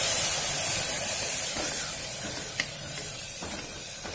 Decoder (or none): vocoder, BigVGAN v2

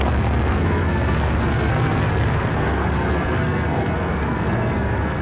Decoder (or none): codec, SNAC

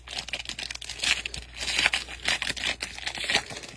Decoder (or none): none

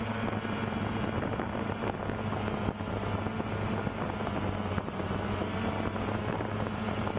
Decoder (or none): none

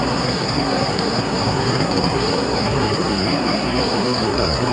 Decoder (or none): codec, SNAC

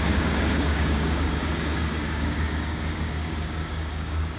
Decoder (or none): codec, DAC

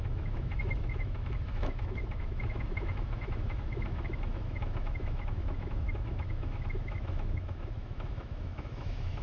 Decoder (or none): autoencoder, DAC-VAE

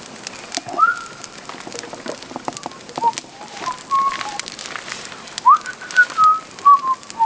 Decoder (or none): none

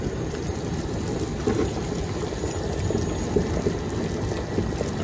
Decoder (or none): none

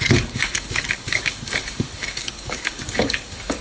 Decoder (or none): codec, DAC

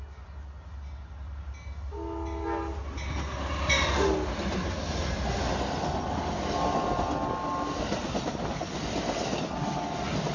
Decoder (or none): none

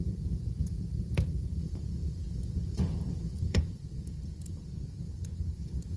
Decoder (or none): vocoder, Vocos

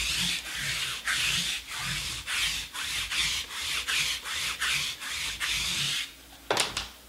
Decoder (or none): none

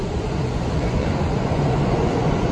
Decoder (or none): vocoder, Vocos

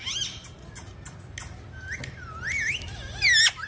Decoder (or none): none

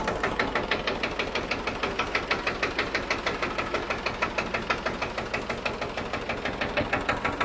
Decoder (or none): none